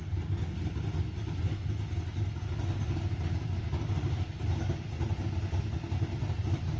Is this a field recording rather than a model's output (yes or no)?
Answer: yes